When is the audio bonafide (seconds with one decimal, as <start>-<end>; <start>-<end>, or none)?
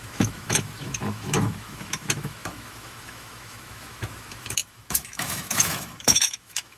none